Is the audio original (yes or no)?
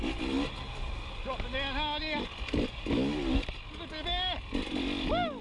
yes